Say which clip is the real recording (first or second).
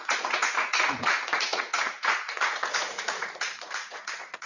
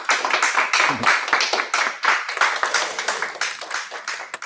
second